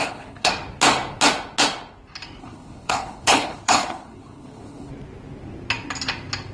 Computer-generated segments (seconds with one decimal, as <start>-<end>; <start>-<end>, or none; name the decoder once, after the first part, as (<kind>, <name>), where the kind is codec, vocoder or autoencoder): 0.0-0.5 (codec, HILCodec); 2.4-4.9